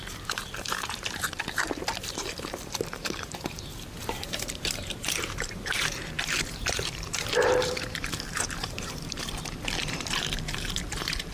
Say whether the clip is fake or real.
fake